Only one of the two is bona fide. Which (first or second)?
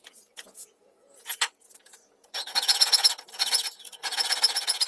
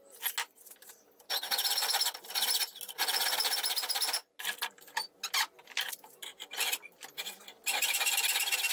second